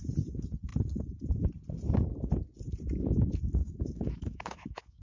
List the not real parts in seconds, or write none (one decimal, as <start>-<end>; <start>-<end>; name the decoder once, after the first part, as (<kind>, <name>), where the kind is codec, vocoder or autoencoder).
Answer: 3.6-5.0 (autoencoder, DAC-VAE)